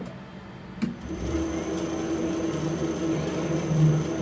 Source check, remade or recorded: recorded